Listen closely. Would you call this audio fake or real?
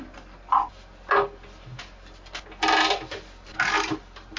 real